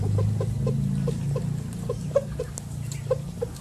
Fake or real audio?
real